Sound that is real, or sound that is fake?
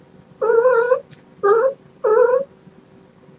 real